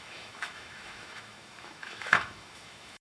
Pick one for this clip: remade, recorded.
remade